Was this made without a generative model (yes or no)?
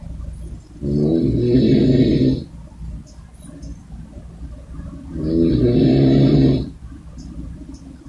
yes